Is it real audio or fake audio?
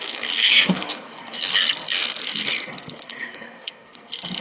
fake